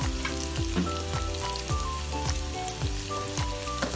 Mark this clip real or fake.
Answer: real